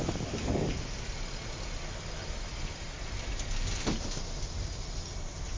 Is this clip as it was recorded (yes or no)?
yes